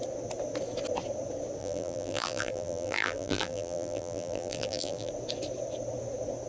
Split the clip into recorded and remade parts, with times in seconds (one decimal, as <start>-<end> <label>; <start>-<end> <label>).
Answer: 0.0-1.6 recorded; 1.6-5.1 remade; 5.1-6.5 recorded